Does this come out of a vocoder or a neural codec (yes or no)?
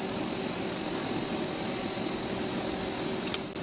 no